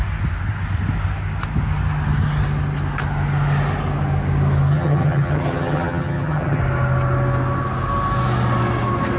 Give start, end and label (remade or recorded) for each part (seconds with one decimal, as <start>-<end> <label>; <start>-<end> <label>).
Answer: 0.0-4.7 recorded; 4.7-6.6 remade; 6.6-9.2 recorded